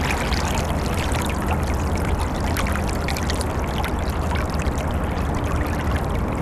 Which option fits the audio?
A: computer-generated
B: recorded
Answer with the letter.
B